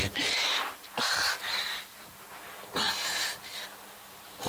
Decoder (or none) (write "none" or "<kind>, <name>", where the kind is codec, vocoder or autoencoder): vocoder, BigVGAN v2